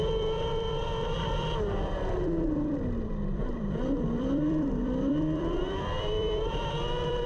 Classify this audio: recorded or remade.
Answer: remade